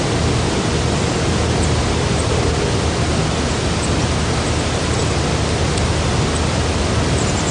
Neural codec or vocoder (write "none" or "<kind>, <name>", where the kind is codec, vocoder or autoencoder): none